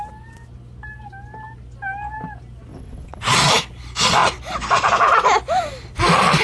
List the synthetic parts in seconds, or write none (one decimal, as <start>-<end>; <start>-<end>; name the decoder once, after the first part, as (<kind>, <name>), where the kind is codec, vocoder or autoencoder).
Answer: 2.7-3.5 (vocoder, WaveNeXt)